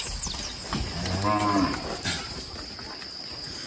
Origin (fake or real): real